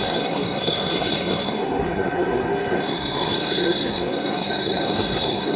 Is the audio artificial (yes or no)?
yes